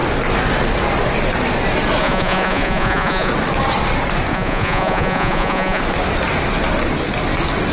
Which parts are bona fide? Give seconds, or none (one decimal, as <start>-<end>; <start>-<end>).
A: 0.0-2.0; 3.3-4.3; 5.8-7.7